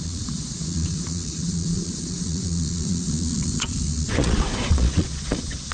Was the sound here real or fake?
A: fake